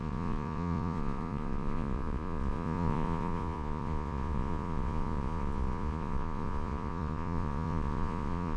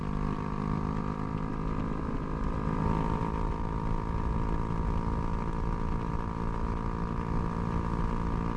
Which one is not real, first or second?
first